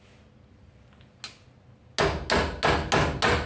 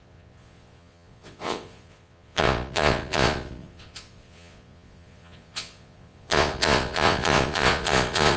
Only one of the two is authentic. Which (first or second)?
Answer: first